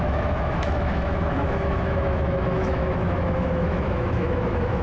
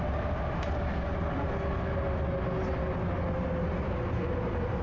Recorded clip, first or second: second